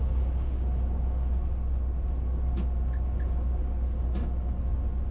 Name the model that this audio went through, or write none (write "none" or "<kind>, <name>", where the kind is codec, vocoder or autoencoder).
none